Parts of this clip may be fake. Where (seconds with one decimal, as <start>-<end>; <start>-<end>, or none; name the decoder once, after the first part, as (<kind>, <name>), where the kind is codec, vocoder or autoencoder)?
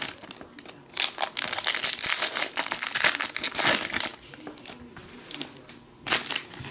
none